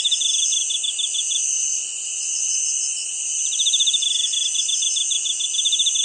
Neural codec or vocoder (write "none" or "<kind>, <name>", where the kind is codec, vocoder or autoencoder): none